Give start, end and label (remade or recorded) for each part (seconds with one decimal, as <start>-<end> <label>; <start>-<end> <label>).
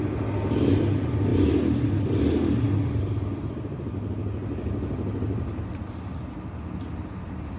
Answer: 0.0-7.6 recorded